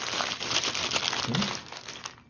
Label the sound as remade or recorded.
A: recorded